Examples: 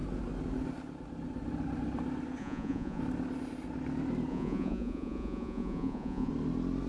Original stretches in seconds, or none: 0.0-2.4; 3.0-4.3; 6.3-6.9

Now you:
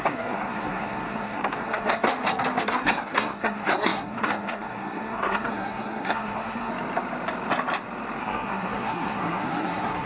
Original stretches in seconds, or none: 2.1-2.6; 6.7-8.2

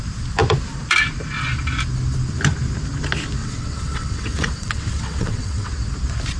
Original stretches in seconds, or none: 0.0-3.4; 5.7-6.4

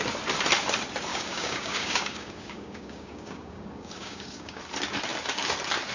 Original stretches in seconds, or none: 0.0-1.1; 4.6-5.9

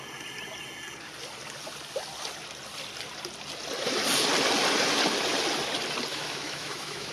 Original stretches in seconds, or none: 0.0-6.1

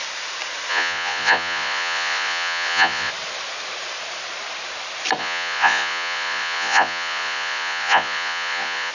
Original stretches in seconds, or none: 0.0-0.7; 3.1-5.2

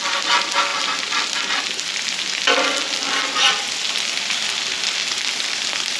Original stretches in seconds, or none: 0.0-6.0